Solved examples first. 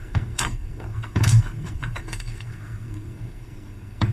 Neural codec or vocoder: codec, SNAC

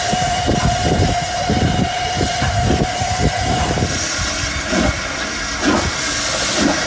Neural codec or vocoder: none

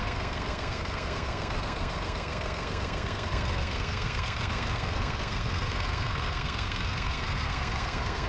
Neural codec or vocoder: codec, SNAC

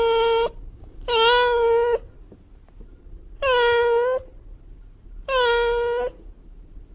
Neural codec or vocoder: none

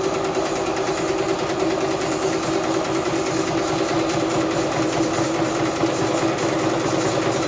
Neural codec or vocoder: none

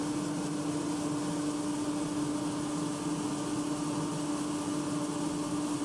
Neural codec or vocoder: none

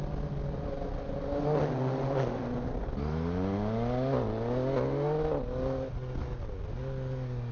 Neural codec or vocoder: none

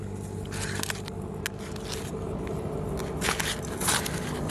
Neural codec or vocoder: none